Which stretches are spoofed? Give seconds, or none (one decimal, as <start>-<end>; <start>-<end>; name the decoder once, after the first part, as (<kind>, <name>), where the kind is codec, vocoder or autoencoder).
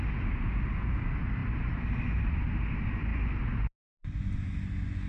none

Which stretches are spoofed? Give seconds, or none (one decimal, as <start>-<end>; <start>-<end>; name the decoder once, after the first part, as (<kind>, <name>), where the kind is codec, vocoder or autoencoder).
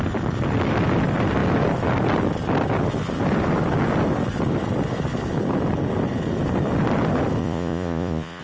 7.4-8.4 (vocoder, Vocos)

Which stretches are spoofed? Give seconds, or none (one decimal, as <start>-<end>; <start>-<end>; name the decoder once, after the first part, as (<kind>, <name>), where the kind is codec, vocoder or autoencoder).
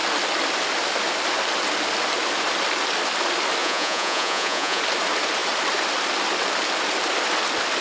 3.6-4.8 (vocoder, Vocos)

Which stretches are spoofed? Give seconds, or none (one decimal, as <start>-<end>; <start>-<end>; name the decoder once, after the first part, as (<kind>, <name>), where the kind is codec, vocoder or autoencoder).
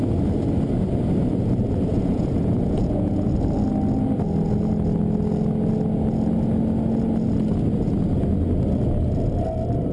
1.9-3.1 (vocoder, Vocos)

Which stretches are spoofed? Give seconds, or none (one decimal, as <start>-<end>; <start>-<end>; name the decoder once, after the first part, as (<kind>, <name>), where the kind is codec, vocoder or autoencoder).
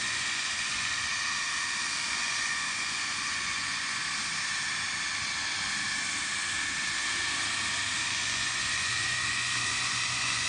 0.0-1.1 (vocoder, Vocos); 2.1-4.0; 8.0-10.5